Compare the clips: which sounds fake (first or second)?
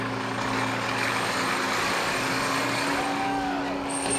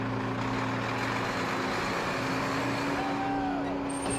first